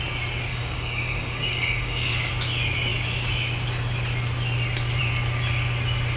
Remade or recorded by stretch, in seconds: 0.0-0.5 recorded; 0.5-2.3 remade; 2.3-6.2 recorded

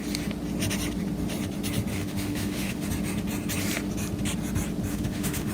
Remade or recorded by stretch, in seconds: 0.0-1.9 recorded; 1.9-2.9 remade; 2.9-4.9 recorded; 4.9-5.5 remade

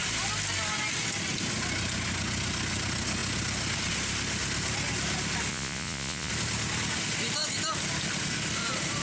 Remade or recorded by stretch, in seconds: 0.0-5.5 recorded; 5.5-6.3 remade; 6.3-9.0 recorded

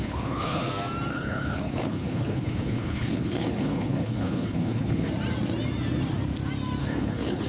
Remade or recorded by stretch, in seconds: 0.0-0.7 remade; 0.7-1.1 recorded; 1.1-5.1 remade; 5.1-6.8 recorded; 6.8-7.5 remade

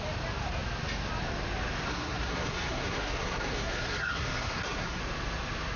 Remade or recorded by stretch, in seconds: 0.0-1.9 recorded; 1.9-5.0 remade; 5.0-5.8 recorded

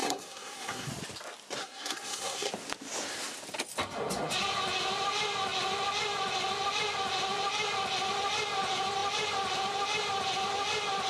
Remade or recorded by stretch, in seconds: 0.0-0.9 remade; 0.9-1.6 recorded; 1.6-2.5 remade; 2.5-11.1 recorded

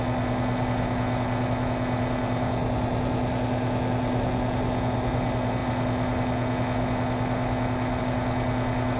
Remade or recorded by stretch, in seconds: 0.0-9.0 recorded

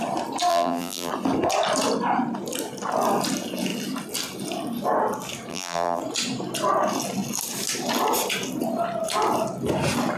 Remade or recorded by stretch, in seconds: 0.0-0.5 recorded; 0.5-1.1 remade; 1.1-5.5 recorded; 5.5-6.0 remade; 6.0-10.2 recorded